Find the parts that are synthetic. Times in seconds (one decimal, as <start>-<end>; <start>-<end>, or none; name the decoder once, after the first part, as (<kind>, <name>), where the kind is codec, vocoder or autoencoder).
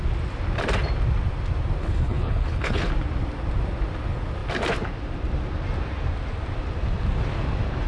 1.8-2.9 (codec, HILCodec)